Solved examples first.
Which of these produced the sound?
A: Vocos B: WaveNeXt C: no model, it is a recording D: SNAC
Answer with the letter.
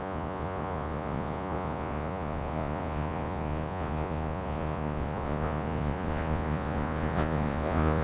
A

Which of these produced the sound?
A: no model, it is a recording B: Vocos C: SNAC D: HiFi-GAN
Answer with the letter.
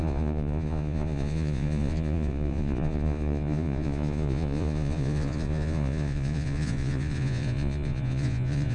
B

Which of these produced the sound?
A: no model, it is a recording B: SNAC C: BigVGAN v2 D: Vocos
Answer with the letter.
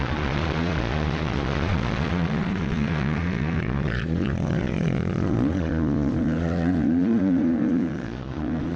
D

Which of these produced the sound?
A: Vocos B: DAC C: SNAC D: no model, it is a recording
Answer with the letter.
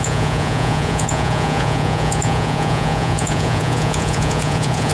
A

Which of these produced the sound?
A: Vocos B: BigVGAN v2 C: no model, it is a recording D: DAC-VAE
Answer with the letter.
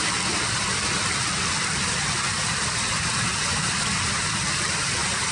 C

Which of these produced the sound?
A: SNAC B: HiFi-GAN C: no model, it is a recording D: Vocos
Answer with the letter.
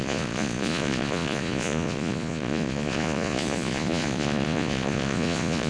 D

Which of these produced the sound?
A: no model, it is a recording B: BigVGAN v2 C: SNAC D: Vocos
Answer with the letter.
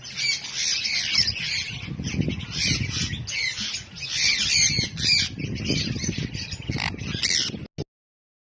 A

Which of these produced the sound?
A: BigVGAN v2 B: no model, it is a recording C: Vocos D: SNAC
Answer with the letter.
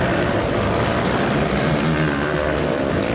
B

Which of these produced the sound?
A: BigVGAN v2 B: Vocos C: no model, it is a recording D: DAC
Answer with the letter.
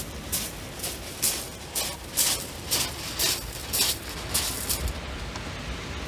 C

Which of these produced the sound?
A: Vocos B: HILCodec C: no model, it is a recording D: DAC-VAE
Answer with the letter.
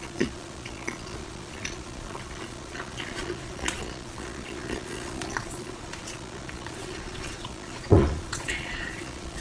A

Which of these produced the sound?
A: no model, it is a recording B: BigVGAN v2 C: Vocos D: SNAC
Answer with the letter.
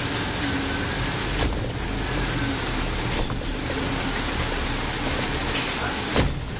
A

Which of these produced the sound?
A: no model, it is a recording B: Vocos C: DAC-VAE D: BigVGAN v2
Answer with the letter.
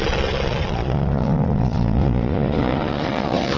B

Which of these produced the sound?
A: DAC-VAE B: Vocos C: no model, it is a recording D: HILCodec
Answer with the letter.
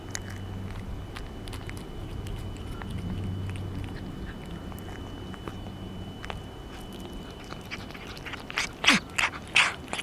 C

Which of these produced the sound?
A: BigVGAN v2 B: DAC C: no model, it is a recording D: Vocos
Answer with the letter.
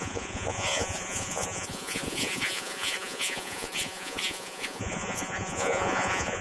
D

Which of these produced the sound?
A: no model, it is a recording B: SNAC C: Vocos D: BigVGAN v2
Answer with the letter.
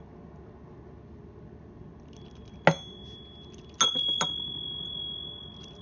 A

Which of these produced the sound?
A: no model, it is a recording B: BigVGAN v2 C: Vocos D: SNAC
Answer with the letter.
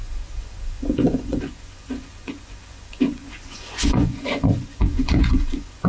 C